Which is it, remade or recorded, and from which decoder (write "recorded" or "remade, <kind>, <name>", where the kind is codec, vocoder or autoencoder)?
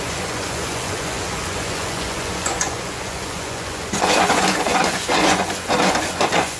remade, vocoder, Vocos